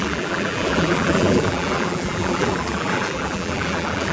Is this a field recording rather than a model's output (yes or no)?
no